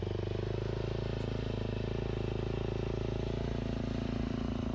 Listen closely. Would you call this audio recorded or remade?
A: recorded